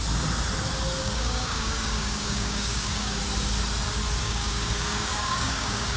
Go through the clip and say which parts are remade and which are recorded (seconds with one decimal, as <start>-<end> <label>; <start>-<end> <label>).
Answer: 0.0-1.0 recorded; 1.0-3.2 remade; 3.2-4.2 recorded; 4.2-6.0 remade